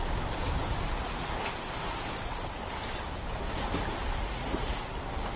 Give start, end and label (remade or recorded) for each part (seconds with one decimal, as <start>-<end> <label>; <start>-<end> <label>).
0.0-4.2 recorded; 4.2-4.9 remade; 4.9-5.4 recorded

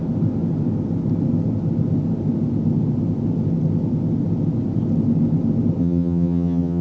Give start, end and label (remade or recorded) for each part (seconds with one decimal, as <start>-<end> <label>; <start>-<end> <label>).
0.0-5.8 recorded; 5.8-6.8 remade

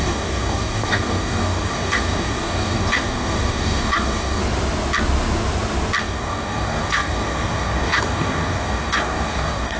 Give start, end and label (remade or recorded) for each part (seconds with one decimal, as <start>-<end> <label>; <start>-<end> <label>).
0.0-4.4 remade; 4.4-6.0 recorded; 6.0-9.8 remade

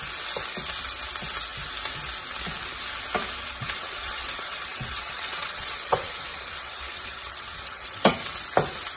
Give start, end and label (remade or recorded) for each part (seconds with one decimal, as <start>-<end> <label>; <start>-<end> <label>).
0.0-3.4 recorded; 3.4-8.1 remade; 8.1-9.0 recorded

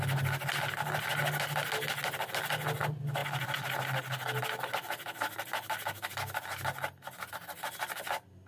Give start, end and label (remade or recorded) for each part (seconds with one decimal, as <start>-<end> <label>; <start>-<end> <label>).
0.0-8.5 recorded